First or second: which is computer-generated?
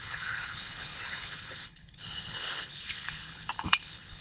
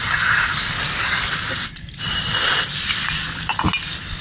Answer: first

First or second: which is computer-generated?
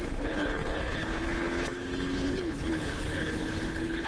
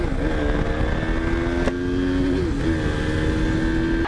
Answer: first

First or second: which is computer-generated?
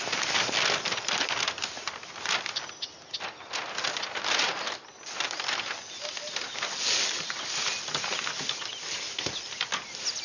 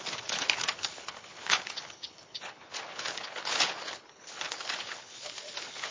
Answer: second